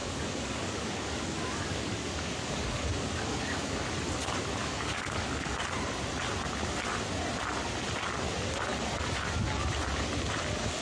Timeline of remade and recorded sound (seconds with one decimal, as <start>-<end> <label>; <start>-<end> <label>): 0.0-3.9 remade; 3.9-4.6 recorded; 4.6-5.5 remade; 5.5-10.8 recorded